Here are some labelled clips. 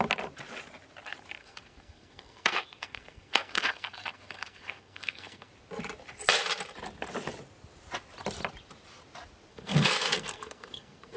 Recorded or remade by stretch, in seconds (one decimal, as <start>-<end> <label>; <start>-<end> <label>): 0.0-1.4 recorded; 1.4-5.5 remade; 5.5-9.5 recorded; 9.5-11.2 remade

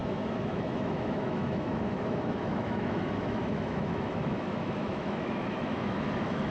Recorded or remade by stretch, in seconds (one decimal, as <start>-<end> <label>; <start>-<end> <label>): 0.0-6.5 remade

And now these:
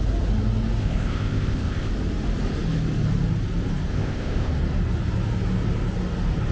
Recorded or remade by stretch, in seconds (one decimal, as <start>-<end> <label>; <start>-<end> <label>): 0.0-0.8 recorded; 0.8-1.9 remade; 1.9-3.9 recorded; 3.9-4.5 remade; 4.5-6.5 recorded

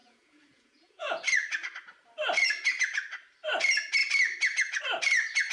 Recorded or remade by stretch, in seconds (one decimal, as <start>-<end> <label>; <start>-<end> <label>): 0.0-1.2 remade; 1.2-5.5 recorded

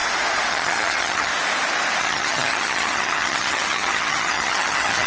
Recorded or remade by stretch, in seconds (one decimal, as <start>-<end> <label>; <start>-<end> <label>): 0.0-0.5 recorded; 0.5-1.3 remade; 1.3-2.0 recorded; 2.0-5.1 remade

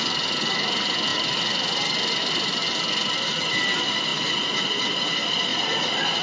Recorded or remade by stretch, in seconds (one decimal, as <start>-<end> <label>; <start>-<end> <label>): 0.0-6.2 recorded

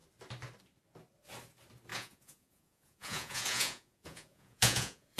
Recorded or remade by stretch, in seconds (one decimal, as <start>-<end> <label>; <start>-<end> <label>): 0.0-1.9 recorded; 1.9-5.2 remade

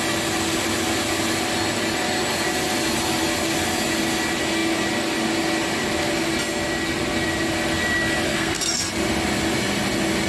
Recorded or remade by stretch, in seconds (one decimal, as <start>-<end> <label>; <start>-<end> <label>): 0.0-8.3 recorded; 8.3-8.9 remade; 8.9-10.3 recorded